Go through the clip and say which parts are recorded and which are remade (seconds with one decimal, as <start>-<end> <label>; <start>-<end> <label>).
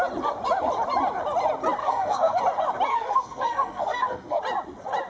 0.0-1.8 recorded; 1.8-2.4 remade; 2.4-2.9 recorded; 2.9-4.4 remade; 4.4-5.1 recorded